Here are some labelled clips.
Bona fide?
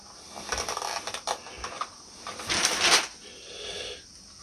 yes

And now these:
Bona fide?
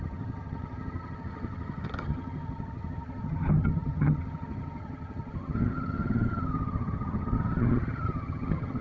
no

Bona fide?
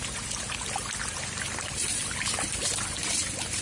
yes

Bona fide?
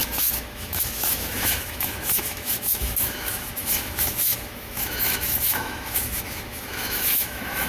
no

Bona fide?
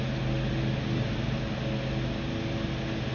yes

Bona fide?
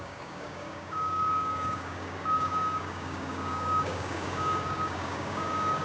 no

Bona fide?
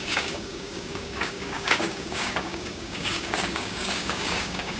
no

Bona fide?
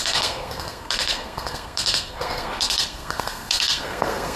no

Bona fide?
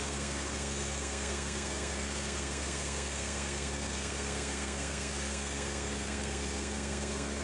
no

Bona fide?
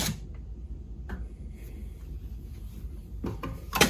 yes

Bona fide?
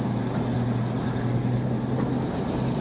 yes